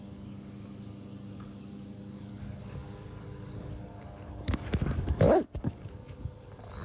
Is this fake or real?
fake